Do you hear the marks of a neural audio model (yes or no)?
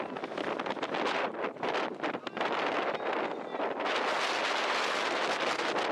no